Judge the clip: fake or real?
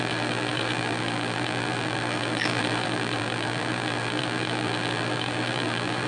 fake